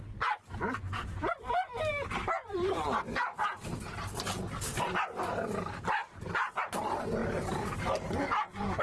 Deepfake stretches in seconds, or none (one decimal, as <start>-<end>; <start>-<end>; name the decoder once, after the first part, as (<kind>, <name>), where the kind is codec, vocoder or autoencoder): 0.0-8.8 (vocoder, BigVGAN v2)